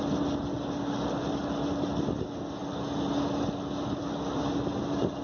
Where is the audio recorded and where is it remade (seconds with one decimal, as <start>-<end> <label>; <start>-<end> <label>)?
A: 0.0-5.2 recorded